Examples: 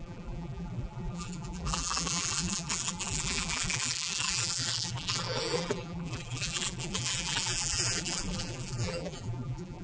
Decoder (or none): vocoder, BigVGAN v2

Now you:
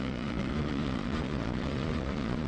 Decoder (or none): vocoder, Vocos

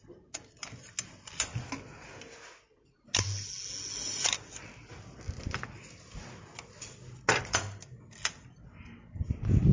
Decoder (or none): none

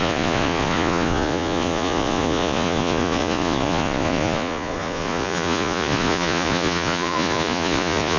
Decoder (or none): vocoder, Vocos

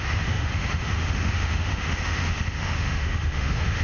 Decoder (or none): autoencoder, DAC-VAE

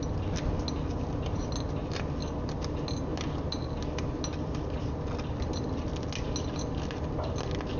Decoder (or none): none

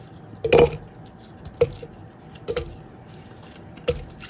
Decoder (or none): none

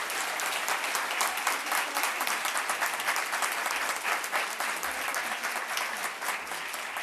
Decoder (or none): none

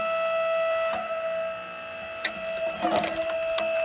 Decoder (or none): none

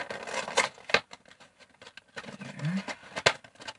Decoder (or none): none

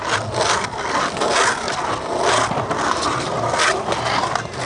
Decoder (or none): none